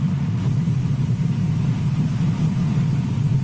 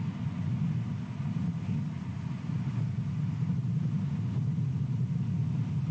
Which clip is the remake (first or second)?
first